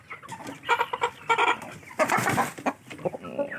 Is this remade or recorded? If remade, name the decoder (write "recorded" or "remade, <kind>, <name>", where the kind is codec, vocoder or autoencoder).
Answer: recorded